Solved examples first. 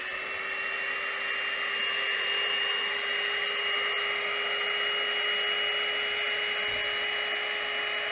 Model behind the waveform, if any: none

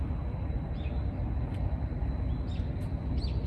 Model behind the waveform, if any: none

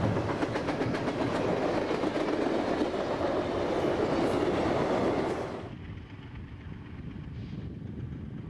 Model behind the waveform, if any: none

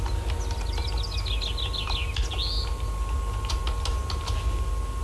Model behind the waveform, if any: none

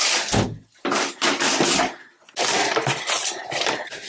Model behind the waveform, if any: none